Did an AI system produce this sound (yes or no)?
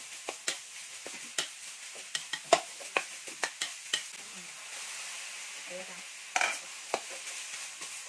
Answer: no